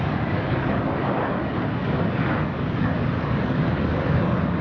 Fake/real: fake